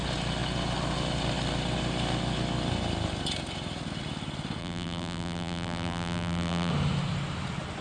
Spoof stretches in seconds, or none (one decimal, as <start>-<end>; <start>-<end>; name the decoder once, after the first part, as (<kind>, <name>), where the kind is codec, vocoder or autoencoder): 4.6-6.7 (vocoder, BigVGAN v2)